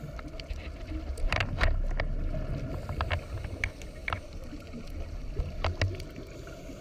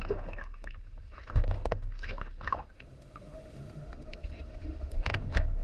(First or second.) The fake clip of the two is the second